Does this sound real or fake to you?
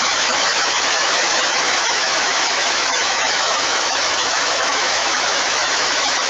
fake